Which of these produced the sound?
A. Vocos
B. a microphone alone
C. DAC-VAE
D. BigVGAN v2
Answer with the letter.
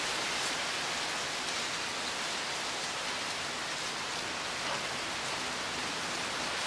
B